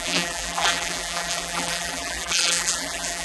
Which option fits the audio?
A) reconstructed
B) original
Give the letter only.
A